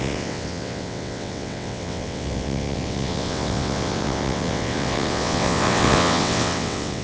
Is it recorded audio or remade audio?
remade